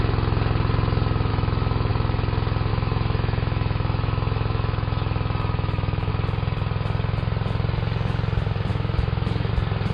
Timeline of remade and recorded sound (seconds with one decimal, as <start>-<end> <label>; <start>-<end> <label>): 0.0-1.3 recorded; 1.3-1.9 remade; 1.9-2.7 recorded; 2.7-6.1 remade; 6.1-8.7 recorded; 8.7-9.5 remade; 9.5-9.9 recorded